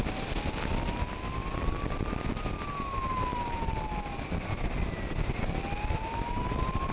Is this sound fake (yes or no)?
no